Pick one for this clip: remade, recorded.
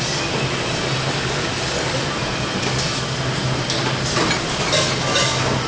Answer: recorded